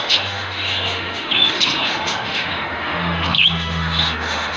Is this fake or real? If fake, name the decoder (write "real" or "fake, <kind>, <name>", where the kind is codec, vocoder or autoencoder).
fake, autoencoder, DAC-VAE